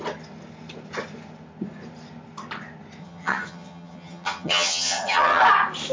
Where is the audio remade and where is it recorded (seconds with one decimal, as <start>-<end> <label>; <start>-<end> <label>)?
0.0-3.0 recorded; 3.0-5.4 remade; 5.4-5.9 recorded